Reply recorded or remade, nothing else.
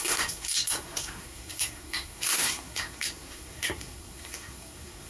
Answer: remade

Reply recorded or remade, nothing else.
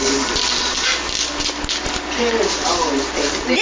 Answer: recorded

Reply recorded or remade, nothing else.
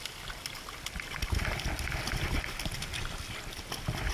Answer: recorded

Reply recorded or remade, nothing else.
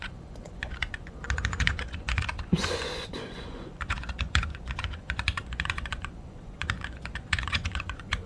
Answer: remade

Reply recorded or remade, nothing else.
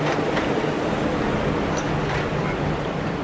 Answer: recorded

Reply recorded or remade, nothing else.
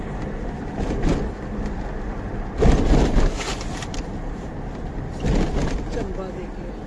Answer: recorded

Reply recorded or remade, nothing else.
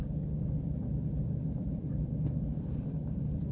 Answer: remade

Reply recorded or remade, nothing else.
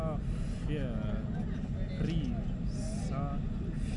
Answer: recorded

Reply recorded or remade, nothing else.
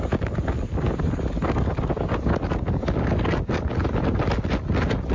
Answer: recorded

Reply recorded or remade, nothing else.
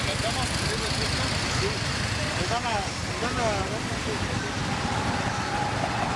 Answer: recorded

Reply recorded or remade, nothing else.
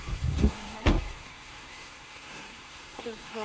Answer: remade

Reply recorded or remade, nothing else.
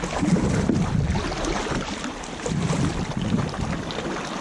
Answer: recorded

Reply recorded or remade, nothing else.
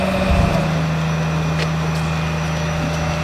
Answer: recorded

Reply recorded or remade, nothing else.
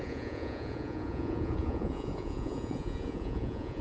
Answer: remade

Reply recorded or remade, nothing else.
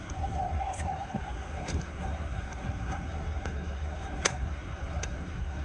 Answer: remade